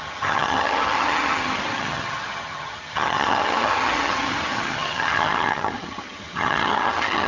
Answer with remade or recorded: remade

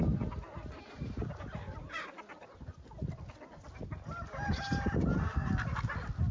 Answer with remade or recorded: recorded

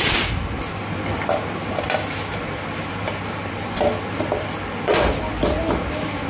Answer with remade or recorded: recorded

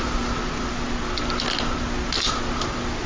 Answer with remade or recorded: recorded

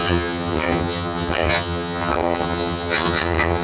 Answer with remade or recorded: remade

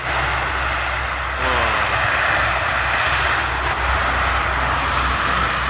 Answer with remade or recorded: recorded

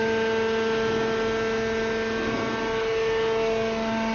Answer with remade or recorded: recorded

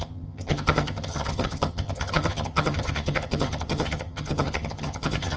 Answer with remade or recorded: remade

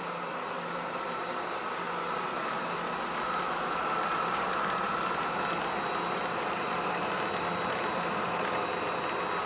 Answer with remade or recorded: recorded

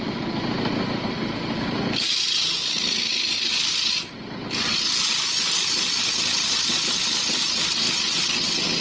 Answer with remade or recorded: recorded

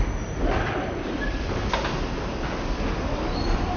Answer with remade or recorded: recorded